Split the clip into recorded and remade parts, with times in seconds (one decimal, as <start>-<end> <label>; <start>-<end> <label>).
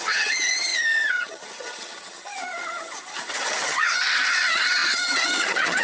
0.0-5.8 remade